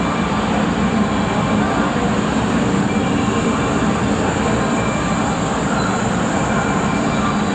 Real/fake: real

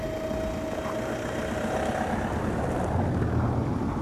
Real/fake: real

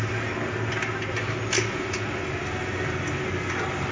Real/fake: real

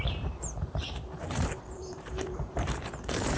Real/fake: fake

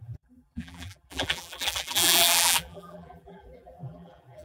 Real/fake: fake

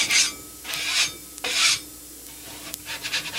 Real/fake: real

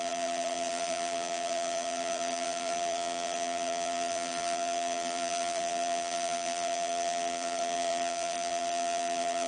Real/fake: fake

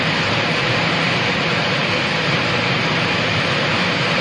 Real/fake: fake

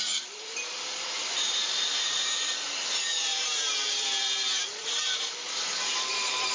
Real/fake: fake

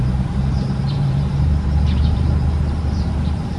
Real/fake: fake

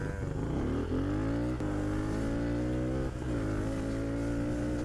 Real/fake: real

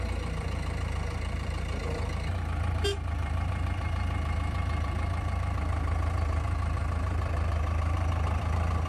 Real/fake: fake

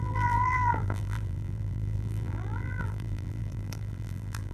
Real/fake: fake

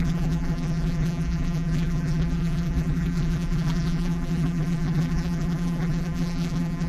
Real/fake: fake